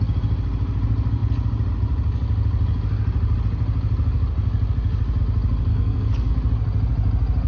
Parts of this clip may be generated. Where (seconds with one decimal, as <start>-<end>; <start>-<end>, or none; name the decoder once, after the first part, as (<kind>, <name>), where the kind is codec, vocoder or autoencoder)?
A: 5.7-6.3 (codec, SNAC)